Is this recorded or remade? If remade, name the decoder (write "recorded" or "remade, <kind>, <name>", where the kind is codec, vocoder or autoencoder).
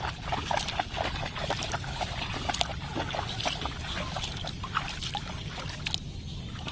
recorded